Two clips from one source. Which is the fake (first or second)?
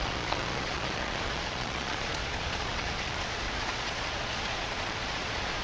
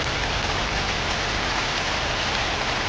first